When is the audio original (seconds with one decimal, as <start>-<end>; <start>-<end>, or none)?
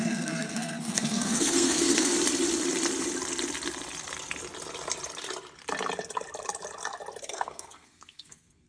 2.1-7.2